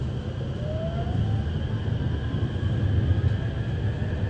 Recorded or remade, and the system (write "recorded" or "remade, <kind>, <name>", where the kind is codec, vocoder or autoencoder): recorded